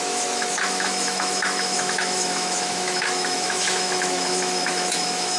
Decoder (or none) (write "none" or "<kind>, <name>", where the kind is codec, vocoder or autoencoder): autoencoder, DAC-VAE